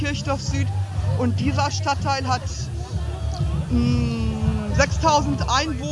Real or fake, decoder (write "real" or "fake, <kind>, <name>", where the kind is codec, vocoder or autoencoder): real